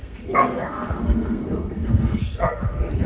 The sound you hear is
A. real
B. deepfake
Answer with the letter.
B